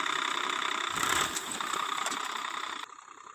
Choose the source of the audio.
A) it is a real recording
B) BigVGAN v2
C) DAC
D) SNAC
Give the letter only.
B